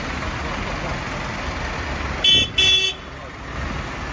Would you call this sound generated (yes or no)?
no